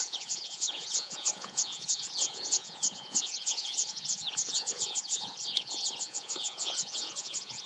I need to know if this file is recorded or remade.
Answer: remade